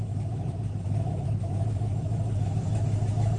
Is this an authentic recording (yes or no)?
no